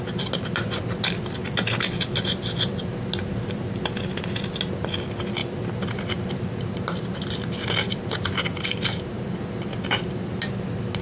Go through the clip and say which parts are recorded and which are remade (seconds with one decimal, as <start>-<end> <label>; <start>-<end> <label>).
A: 0.0-11.0 recorded